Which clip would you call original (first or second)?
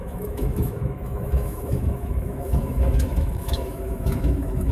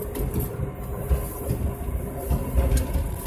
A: second